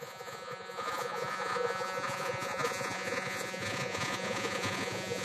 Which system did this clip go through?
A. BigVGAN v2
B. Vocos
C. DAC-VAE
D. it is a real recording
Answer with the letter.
B